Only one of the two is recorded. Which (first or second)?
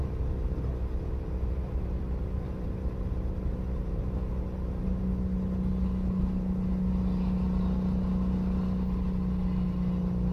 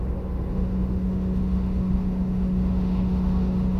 first